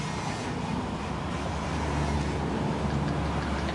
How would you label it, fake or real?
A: real